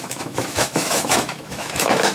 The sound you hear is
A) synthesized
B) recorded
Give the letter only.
A